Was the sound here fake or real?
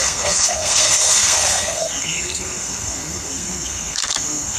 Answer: fake